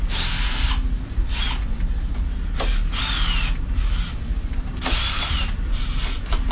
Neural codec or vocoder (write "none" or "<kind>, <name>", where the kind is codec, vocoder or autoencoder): none